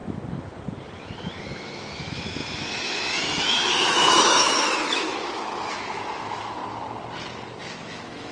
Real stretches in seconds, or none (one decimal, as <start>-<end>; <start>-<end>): 0.0-1.4; 6.6-7.6